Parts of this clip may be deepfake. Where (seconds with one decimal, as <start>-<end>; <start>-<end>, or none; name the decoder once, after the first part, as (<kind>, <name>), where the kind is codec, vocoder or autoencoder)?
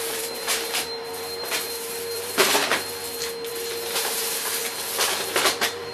0.0-2.6 (vocoder, BigVGAN v2); 3.5-4.6; 5.3-5.9